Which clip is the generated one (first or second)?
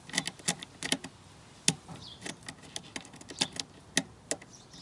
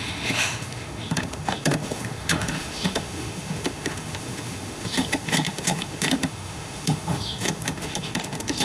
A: second